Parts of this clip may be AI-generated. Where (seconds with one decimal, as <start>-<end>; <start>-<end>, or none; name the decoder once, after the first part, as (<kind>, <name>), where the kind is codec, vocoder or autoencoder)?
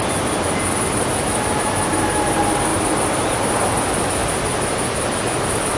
2.7-3.3 (vocoder, BigVGAN v2)